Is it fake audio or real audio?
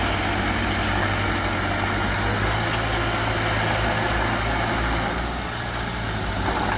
real